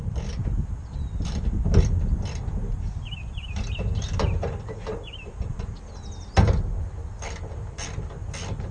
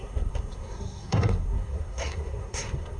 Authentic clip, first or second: first